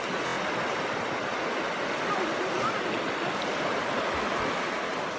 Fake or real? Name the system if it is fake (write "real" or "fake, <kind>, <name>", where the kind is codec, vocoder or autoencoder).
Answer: real